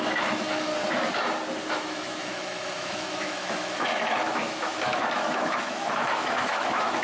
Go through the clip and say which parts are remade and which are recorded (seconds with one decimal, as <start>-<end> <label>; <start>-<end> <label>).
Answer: 0.0-0.7 remade; 0.7-1.7 recorded; 1.7-7.0 remade